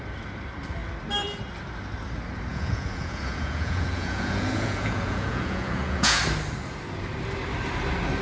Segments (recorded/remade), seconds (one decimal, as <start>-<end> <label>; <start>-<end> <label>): 0.0-2.5 recorded; 2.5-6.2 remade; 6.2-8.2 recorded